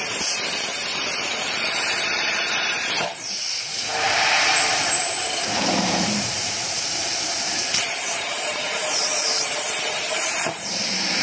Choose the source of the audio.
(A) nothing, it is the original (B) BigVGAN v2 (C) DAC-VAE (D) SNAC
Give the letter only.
B